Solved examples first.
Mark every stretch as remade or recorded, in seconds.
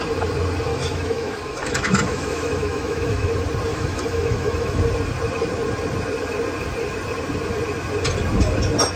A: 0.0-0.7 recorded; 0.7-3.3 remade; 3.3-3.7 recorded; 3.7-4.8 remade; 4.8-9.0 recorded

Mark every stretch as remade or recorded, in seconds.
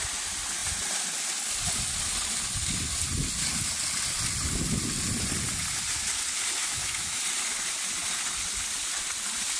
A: 0.0-6.6 recorded; 6.6-7.2 remade; 7.2-9.6 recorded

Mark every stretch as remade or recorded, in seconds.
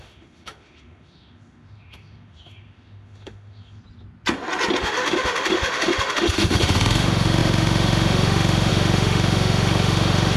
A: 0.0-3.8 remade; 3.8-4.8 recorded; 4.8-10.4 remade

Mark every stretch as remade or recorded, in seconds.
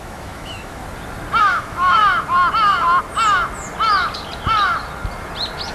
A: 0.0-0.8 remade; 0.8-1.4 recorded; 1.4-2.0 remade; 2.0-5.7 recorded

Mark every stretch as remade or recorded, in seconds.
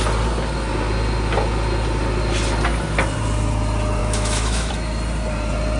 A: 0.0-4.0 recorded; 4.0-4.7 remade; 4.7-5.8 recorded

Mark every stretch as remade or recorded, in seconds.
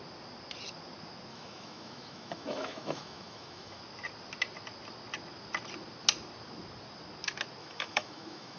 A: 0.0-1.3 recorded; 1.3-3.8 remade; 3.8-7.6 recorded; 7.6-8.6 remade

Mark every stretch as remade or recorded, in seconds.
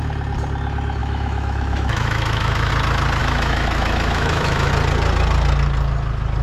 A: 0.0-1.0 recorded; 1.0-2.7 remade; 2.7-3.2 recorded; 3.2-4.7 remade; 4.7-6.4 recorded